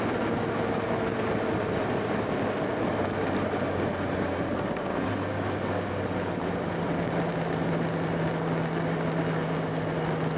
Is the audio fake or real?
real